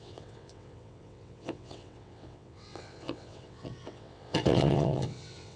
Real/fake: fake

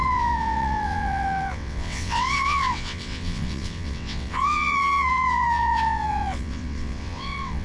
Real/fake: fake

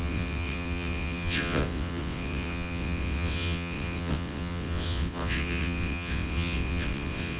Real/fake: fake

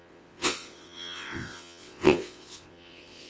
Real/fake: fake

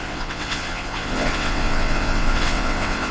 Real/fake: fake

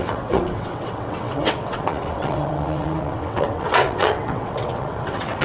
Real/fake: fake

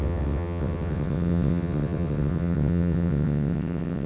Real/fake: fake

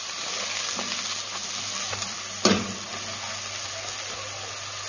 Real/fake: real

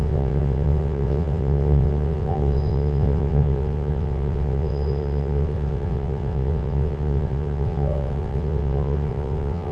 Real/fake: fake